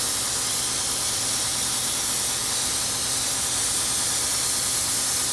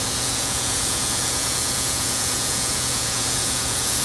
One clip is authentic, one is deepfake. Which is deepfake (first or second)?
second